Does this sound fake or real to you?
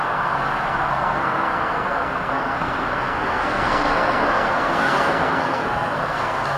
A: fake